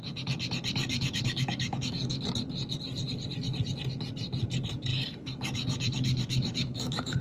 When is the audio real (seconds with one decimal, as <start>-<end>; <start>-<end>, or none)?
0.0-0.8; 2.2-4.9